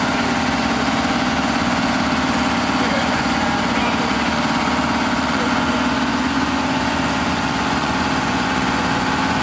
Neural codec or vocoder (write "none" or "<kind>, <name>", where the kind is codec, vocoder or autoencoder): vocoder, Vocos